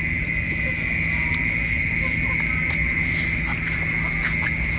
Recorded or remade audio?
recorded